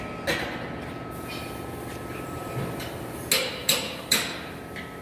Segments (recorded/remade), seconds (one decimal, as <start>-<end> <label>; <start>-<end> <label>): 0.0-2.1 recorded; 2.1-2.8 remade; 2.8-3.6 recorded; 3.6-4.6 remade; 4.6-5.0 recorded